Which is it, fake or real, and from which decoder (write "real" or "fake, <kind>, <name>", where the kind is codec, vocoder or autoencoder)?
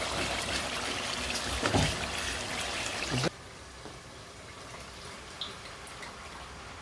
real